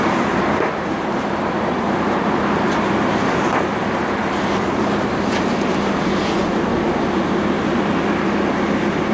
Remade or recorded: remade